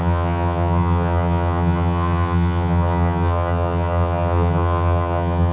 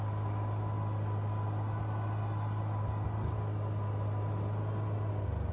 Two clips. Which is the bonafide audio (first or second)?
second